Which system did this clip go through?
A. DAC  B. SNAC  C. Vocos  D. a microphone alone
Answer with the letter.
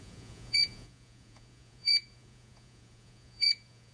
C